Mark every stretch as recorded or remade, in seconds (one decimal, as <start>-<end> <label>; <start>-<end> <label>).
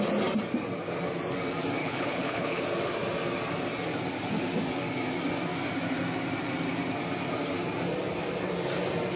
0.0-1.8 recorded; 1.8-2.6 remade; 2.6-9.2 recorded